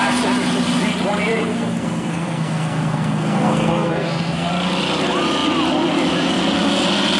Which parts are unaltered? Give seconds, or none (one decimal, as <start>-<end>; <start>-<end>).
0.0-1.5; 4.5-7.2